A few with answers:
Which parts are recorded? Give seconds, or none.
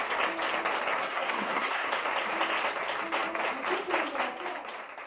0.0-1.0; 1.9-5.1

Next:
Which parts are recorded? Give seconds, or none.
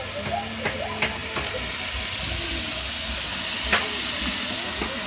0.0-5.1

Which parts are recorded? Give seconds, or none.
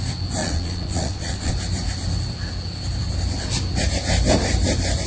0.0-0.4; 1.5-5.1